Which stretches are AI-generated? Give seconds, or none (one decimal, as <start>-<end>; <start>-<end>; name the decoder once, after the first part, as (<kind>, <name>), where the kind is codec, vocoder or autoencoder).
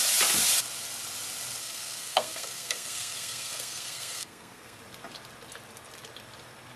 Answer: 1.6-4.8 (codec, SNAC)